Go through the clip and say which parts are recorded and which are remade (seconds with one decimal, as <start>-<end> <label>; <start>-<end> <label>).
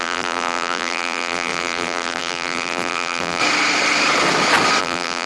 0.0-3.4 remade; 3.4-4.8 recorded; 4.8-5.3 remade